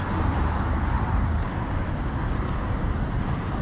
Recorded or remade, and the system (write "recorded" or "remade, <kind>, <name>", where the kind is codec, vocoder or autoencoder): recorded